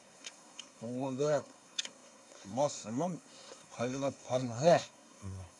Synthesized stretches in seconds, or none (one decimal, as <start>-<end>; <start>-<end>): 0.0-5.6